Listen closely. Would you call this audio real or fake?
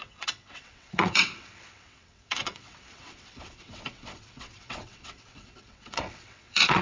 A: fake